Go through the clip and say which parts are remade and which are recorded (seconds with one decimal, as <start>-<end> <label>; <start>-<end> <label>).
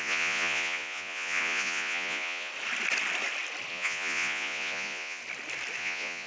0.0-2.5 remade; 2.5-3.7 recorded; 3.7-5.2 remade; 5.2-5.8 recorded; 5.8-6.3 remade